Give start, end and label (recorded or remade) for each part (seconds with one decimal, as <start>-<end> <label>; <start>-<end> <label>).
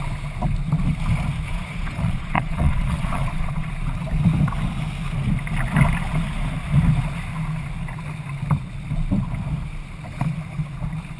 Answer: 0.0-1.5 recorded; 1.5-3.7 remade; 3.7-11.2 recorded